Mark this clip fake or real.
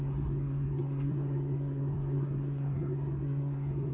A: fake